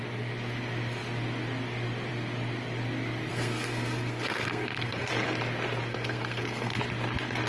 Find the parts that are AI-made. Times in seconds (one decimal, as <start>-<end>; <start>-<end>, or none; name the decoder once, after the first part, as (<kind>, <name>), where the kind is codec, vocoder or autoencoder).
3.3-5.1 (codec, SNAC); 5.9-6.8